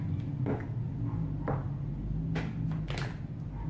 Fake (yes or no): no